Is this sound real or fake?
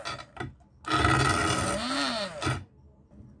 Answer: real